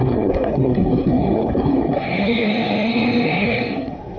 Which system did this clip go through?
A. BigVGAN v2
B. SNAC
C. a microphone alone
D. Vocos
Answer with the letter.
B